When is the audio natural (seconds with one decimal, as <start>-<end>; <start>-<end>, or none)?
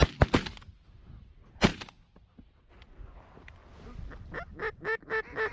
0.0-5.5